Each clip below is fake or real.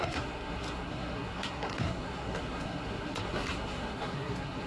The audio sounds fake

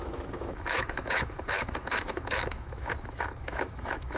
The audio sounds fake